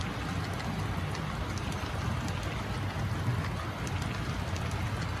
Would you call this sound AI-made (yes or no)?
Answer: no